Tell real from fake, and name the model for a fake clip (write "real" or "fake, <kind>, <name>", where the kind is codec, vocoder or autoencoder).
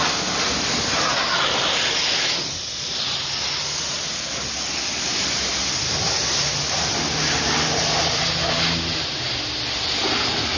real